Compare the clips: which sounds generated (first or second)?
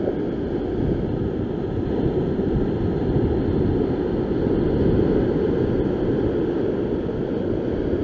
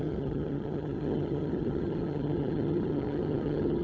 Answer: second